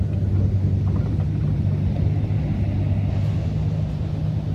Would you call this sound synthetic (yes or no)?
no